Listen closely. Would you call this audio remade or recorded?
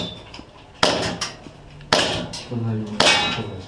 recorded